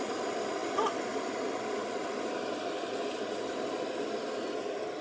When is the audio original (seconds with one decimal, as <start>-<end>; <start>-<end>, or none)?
0.0-5.0